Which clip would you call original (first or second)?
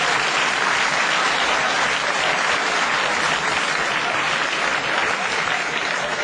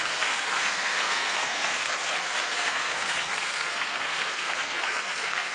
first